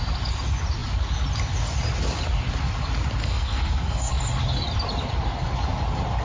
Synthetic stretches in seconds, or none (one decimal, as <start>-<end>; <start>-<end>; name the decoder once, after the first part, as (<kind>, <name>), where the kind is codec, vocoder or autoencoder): 3.2-4.1 (codec, SNAC)